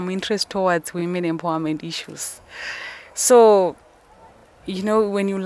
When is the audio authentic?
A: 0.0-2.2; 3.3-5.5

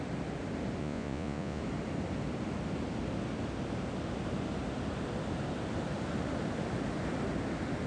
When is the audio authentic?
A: 0.0-0.8; 1.6-7.9

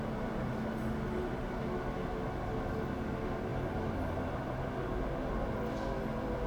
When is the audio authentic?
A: 0.0-6.5

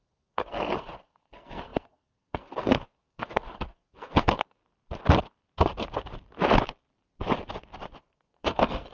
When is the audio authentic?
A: 4.6-8.0

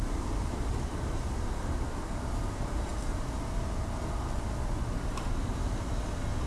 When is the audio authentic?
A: 0.9-2.1; 2.9-4.9